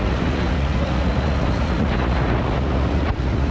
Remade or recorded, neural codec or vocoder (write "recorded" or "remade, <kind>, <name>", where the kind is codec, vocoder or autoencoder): remade, vocoder, Vocos